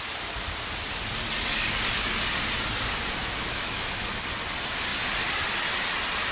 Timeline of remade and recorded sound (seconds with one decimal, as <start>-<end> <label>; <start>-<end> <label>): 0.0-3.2 recorded; 3.2-4.1 remade; 4.1-6.3 recorded